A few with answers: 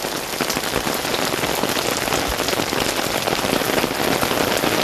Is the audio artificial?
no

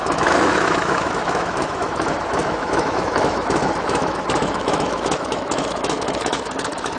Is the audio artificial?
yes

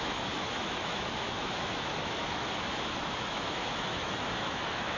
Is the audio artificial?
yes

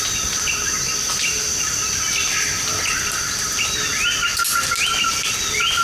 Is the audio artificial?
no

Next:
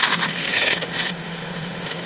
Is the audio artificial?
yes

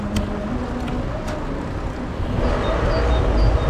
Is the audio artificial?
no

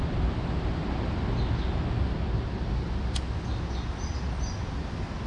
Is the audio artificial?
no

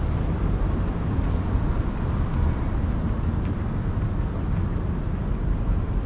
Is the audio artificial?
no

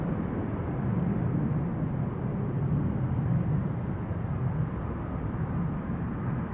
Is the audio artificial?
no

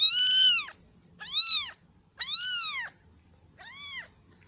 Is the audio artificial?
no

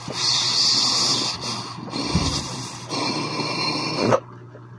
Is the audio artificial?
no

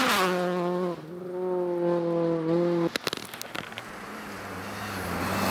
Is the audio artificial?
no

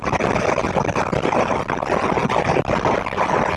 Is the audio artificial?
no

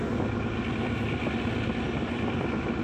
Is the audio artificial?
no